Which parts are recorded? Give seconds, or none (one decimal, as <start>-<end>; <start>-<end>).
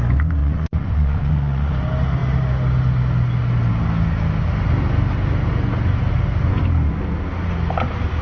0.0-0.4; 1.7-8.2